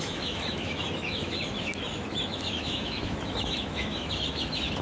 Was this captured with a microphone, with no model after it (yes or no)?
no